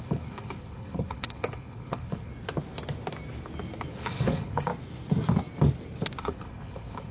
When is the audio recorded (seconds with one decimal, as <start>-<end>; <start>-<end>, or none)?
2.3-3.9; 4.7-6.2